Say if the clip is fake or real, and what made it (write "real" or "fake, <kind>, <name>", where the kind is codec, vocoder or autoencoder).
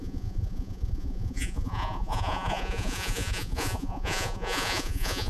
fake, vocoder, Vocos